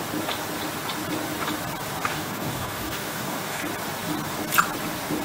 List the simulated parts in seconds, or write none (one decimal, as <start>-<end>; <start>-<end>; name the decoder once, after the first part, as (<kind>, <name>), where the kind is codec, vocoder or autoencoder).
2.1-3.6 (codec, DAC)